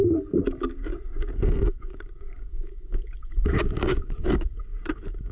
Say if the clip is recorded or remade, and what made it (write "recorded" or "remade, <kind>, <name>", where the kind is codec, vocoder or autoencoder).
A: remade, codec, DAC